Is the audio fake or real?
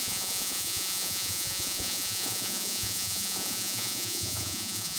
fake